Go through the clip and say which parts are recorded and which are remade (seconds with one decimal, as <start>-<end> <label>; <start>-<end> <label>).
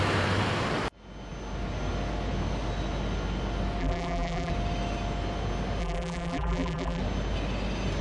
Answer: 0.0-3.8 recorded; 3.8-4.5 remade; 4.5-5.8 recorded; 5.8-7.0 remade; 7.0-8.0 recorded